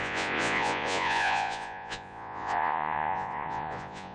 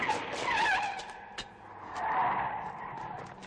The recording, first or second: second